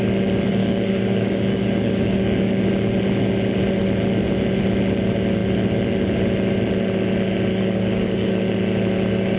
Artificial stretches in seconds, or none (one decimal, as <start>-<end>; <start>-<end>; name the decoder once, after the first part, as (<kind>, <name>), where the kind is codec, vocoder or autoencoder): 0.6-2.7 (codec, DAC); 7.5-8.3